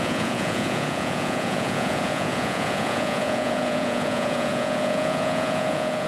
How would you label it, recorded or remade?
remade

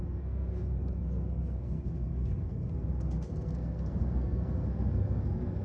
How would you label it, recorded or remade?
remade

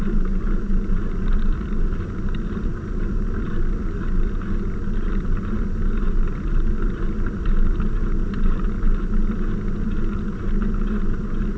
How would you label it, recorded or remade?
recorded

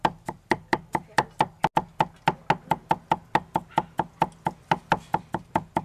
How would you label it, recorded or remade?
recorded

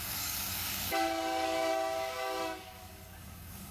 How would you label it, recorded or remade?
remade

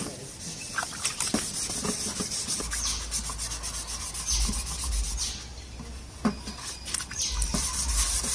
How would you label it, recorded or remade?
recorded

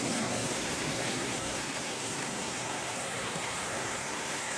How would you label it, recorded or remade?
remade